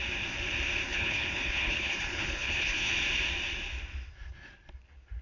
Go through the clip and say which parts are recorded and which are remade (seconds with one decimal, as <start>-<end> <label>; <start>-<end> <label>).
0.0-0.9 recorded; 0.9-2.9 remade; 2.9-5.2 recorded